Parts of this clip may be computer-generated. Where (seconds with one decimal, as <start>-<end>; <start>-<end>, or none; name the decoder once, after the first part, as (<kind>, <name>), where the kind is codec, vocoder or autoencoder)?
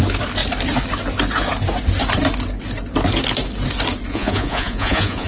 4.1-5.3 (vocoder, Vocos)